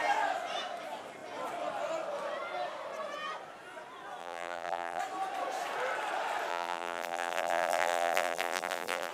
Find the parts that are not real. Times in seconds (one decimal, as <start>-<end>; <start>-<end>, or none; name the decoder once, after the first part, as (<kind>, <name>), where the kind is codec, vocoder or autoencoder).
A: 4.2-5.0 (vocoder, BigVGAN v2); 6.5-9.1